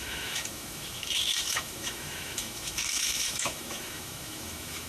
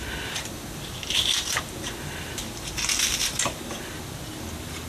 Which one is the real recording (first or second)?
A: second